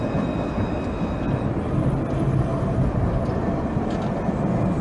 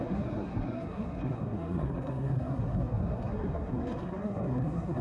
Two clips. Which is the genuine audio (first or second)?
first